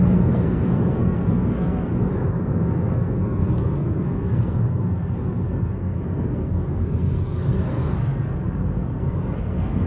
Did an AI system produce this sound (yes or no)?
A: yes